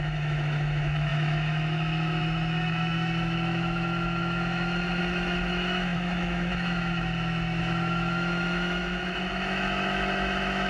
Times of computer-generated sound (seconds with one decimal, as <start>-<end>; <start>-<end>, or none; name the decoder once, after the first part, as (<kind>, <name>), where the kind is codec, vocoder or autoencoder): 0.0-10.7 (autoencoder, DAC-VAE)